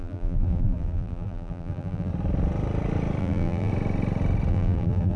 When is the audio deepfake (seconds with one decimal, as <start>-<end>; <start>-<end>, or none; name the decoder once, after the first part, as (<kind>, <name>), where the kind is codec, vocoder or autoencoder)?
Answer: 0.0-2.1 (vocoder, BigVGAN v2); 3.2-3.7; 4.5-5.2